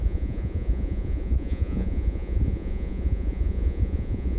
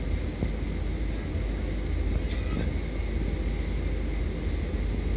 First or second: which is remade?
first